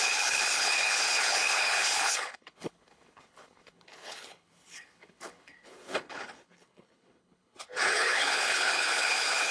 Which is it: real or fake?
fake